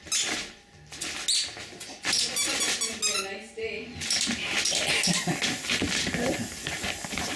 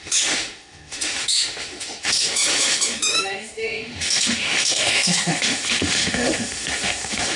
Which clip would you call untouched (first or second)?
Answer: first